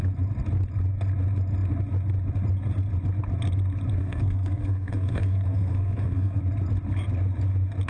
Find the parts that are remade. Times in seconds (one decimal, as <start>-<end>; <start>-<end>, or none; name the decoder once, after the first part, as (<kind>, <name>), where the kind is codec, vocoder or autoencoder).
4.0-6.4 (codec, SNAC)